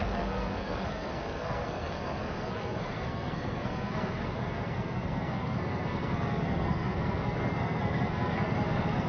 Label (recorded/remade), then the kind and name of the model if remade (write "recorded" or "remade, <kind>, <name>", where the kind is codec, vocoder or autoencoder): remade, codec, SNAC